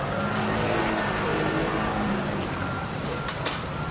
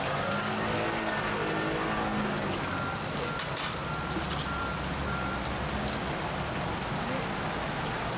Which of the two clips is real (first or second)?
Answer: second